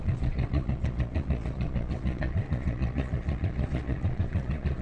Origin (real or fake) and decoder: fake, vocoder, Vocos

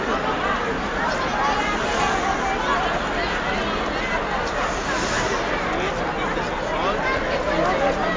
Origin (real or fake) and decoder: real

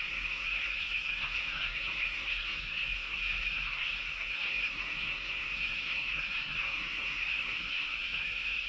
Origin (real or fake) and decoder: fake, codec, SNAC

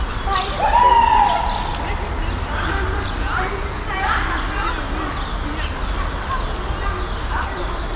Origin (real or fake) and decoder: real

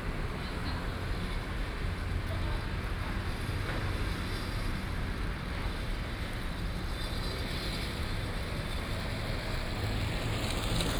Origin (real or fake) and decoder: real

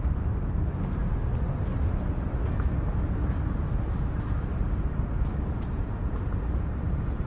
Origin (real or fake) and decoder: real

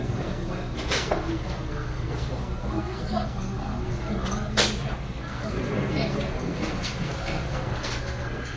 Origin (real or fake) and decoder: fake, codec, SNAC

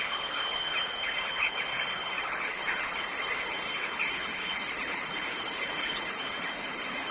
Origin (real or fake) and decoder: fake, codec, HILCodec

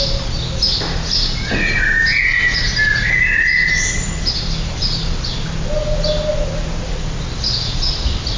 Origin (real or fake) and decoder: real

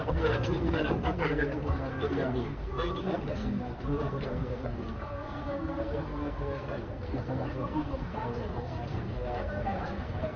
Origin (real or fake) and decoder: fake, codec, SNAC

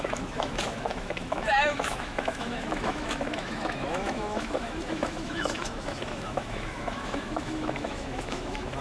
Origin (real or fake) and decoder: fake, autoencoder, DAC-VAE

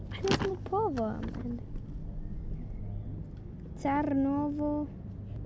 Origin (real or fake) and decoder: real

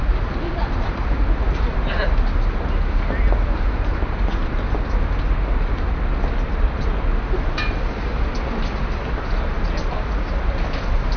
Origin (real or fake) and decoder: real